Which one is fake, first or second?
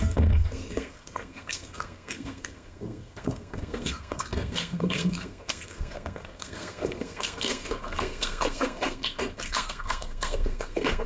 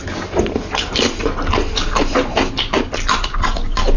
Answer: first